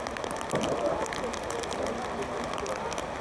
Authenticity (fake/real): real